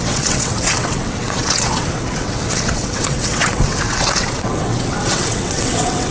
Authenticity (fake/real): fake